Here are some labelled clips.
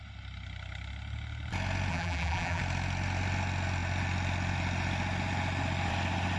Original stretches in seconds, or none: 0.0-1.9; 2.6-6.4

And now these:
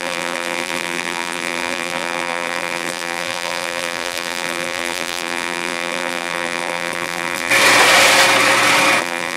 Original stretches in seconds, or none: 7.5-9.0

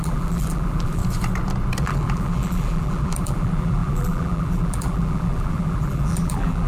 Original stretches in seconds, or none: 1.0-1.8

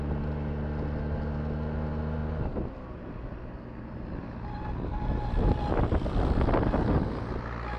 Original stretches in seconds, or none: 0.0-7.8

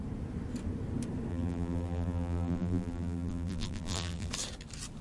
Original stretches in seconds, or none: 0.0-1.3; 4.3-5.0

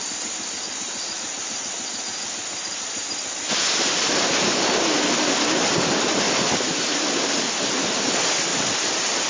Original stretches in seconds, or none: none